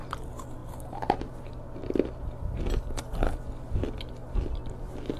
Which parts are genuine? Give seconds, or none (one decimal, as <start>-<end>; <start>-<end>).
0.0-5.2